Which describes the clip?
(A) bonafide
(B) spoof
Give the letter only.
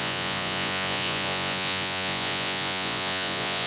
B